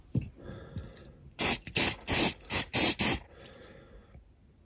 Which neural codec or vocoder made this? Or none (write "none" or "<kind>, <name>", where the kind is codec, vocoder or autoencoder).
none